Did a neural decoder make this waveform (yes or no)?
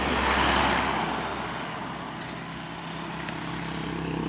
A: no